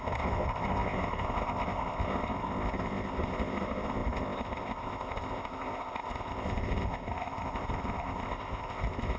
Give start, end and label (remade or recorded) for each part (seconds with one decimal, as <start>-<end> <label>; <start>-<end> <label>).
0.0-9.2 remade